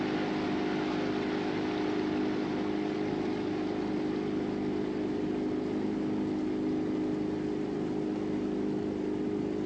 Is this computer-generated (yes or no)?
no